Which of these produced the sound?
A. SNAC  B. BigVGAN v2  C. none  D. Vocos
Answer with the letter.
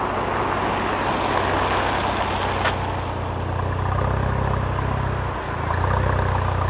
C